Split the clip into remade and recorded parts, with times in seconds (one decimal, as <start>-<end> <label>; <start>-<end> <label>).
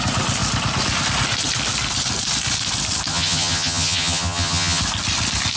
0.0-3.1 recorded; 3.1-4.8 remade; 4.8-5.6 recorded